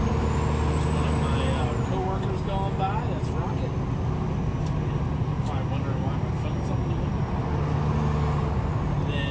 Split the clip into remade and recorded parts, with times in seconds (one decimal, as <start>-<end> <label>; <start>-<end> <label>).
0.0-9.3 recorded